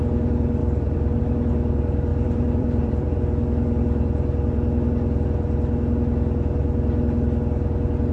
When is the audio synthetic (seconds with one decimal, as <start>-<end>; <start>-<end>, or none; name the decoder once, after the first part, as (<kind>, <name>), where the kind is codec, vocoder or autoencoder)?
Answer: 0.6-1.2 (vocoder, BigVGAN v2); 2.1-3.2